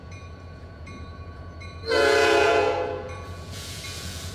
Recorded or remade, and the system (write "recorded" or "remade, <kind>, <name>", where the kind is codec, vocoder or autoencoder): remade, vocoder, Vocos